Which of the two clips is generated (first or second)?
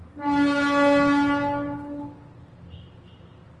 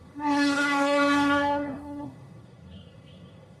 second